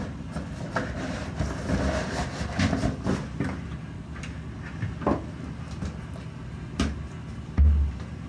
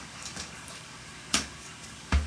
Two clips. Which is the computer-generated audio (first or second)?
second